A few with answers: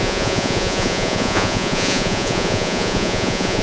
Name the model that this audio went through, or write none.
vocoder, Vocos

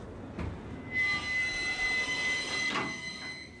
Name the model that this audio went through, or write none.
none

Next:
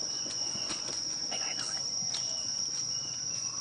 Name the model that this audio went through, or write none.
vocoder, Vocos